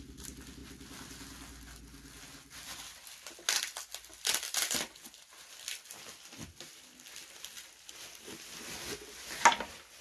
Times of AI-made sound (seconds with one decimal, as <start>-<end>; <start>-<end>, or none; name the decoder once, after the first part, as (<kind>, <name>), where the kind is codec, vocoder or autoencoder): none